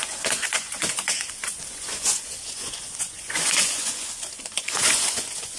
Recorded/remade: remade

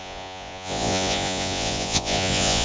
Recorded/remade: remade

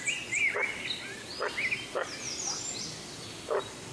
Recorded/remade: recorded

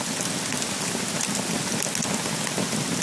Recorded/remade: recorded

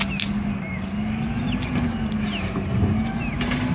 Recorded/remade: recorded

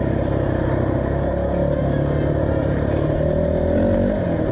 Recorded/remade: recorded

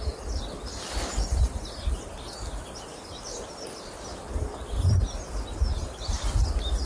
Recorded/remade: recorded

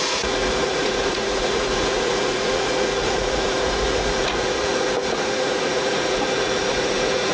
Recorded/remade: remade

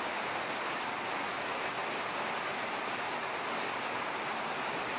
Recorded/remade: recorded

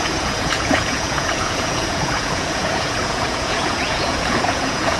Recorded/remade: remade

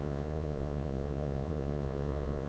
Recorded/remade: remade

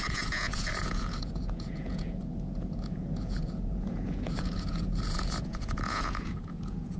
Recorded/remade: remade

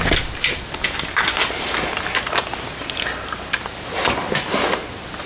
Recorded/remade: recorded